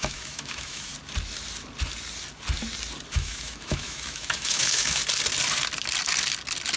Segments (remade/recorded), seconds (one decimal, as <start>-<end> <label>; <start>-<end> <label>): 0.0-0.9 remade; 0.9-3.1 recorded; 3.1-5.0 remade; 5.0-6.8 recorded